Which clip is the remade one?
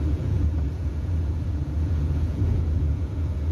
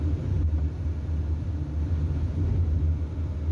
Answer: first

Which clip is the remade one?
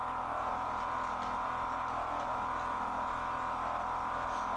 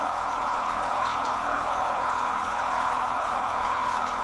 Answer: second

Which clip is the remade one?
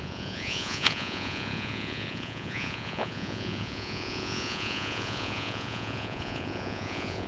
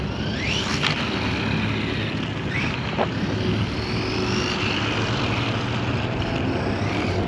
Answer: first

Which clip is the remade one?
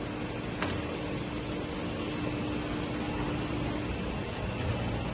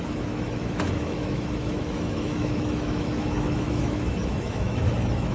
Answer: second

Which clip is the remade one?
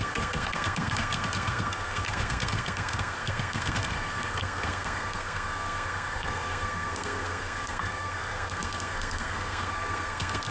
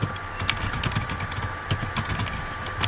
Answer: first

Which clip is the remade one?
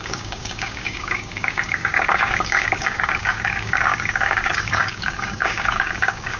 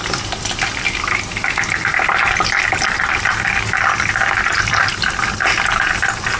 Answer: first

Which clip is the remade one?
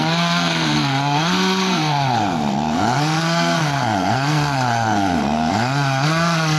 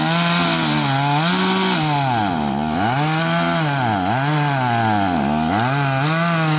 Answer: first